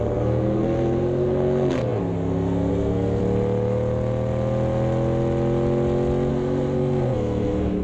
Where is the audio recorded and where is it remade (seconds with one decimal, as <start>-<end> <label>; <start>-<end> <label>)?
0.0-3.2 remade; 3.2-6.3 recorded; 6.3-7.8 remade